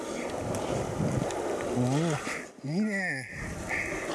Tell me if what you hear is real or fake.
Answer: real